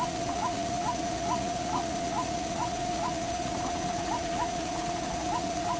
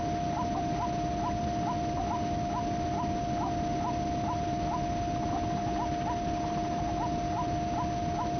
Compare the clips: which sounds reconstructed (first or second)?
first